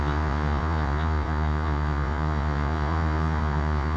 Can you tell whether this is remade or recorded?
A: remade